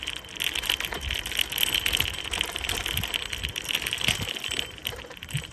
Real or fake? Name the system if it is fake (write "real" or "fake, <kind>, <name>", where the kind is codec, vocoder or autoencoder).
real